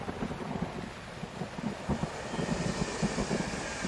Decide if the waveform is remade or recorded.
recorded